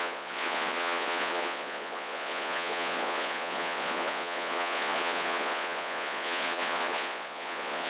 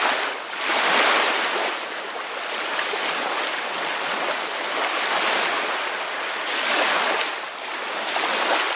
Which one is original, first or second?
second